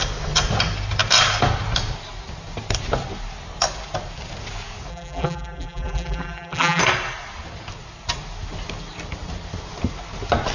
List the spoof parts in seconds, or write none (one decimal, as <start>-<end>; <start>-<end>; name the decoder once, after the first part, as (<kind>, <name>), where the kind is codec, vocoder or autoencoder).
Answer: 4.9-6.8 (vocoder, BigVGAN v2)